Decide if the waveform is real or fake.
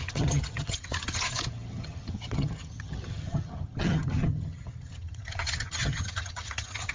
fake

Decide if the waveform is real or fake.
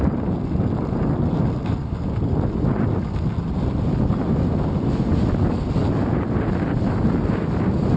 real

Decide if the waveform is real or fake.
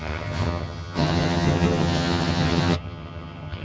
fake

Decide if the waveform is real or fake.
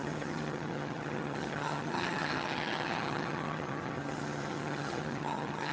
fake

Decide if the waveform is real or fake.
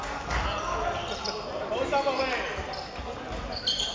real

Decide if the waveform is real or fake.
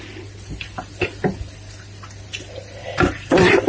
real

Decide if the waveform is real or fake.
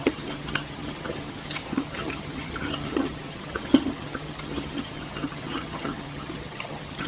fake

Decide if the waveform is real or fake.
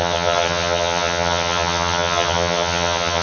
fake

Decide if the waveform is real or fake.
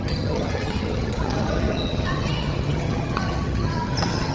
fake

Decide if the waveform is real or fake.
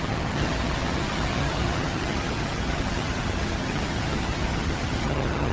fake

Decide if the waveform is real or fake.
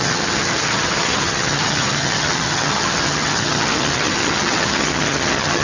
fake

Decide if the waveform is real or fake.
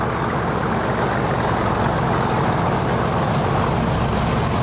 real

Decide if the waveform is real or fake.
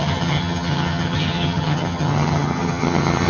fake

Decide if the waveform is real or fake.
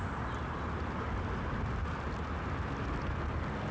real